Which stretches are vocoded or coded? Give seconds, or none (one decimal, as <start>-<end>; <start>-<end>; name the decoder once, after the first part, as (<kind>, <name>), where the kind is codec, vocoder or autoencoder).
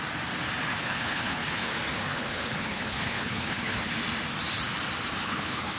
0.8-1.7 (codec, HILCodec); 2.1-3.9; 5.2-5.8